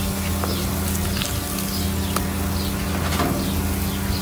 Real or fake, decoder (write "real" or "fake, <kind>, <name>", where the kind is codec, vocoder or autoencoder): real